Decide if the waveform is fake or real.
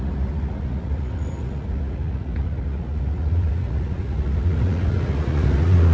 fake